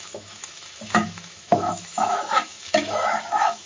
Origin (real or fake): fake